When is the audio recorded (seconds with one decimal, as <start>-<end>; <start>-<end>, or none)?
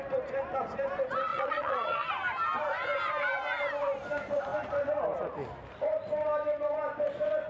0.0-1.3; 2.1-7.5